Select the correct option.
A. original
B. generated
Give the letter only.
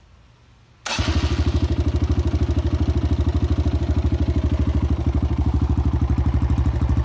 A